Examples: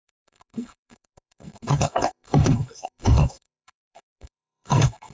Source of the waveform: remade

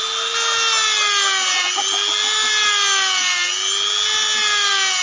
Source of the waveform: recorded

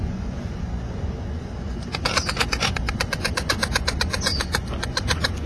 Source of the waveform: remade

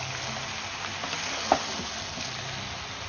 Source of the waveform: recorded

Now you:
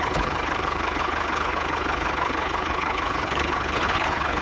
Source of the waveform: remade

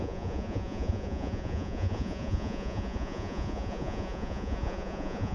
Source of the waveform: remade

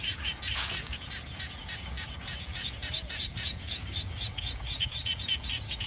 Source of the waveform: remade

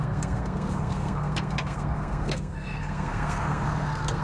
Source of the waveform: remade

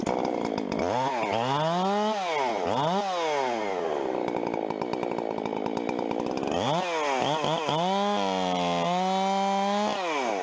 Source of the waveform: recorded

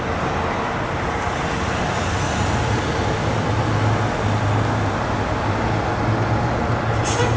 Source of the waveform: recorded